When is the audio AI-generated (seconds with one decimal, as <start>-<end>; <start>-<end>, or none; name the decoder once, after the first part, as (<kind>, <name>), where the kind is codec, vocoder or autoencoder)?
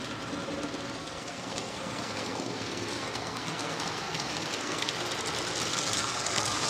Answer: 1.0-4.9 (codec, SNAC); 5.7-6.7